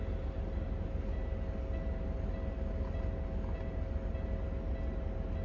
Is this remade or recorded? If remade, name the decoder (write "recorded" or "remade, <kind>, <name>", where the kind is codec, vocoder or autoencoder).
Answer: recorded